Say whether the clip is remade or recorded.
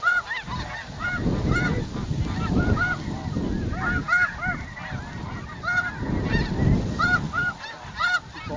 recorded